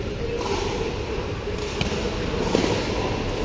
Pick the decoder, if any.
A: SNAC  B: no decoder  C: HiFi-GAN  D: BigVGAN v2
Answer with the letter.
B